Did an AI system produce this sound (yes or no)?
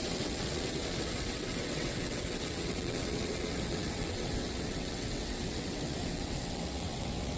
yes